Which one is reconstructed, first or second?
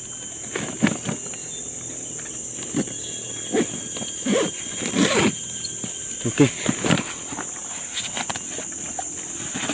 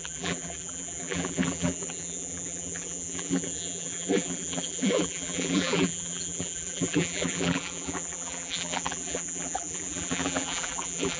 second